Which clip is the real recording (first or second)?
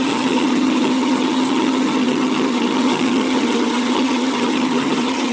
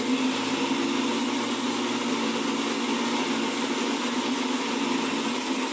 second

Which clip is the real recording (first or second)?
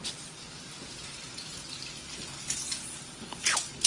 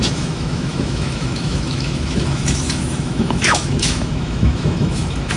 first